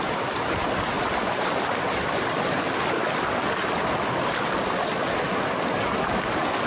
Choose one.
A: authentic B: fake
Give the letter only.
A